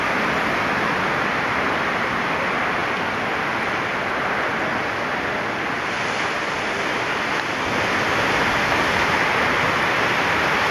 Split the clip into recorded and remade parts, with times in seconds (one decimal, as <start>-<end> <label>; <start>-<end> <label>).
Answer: 0.0-2.8 recorded; 2.8-4.1 remade; 4.1-10.7 recorded